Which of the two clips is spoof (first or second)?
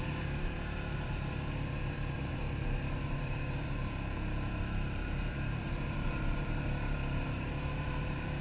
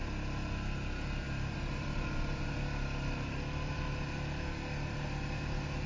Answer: first